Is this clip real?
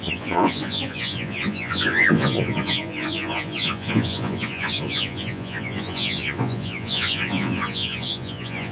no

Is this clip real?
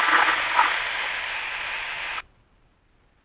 yes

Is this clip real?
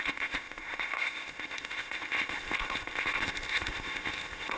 no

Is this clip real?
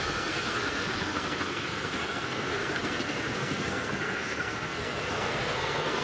no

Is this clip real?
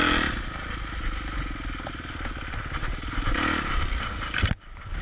yes